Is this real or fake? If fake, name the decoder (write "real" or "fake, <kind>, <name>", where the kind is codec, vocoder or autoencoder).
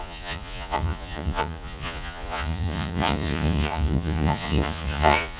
fake, vocoder, Vocos